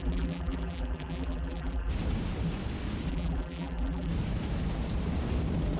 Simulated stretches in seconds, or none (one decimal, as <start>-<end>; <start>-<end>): 0.0-1.9; 3.1-4.1